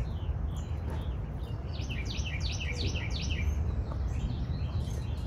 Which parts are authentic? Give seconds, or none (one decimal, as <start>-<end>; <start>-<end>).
0.0-1.6; 4.8-5.3